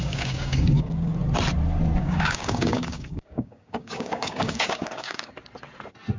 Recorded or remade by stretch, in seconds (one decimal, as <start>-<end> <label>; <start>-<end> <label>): 0.0-1.1 remade; 1.1-2.0 recorded; 2.0-5.3 remade; 5.3-6.2 recorded